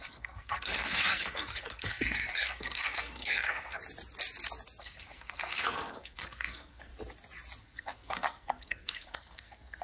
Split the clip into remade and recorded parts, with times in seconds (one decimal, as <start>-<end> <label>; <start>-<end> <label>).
0.0-3.8 remade; 3.8-4.8 recorded; 4.8-6.9 remade; 6.9-7.6 recorded; 7.6-9.8 remade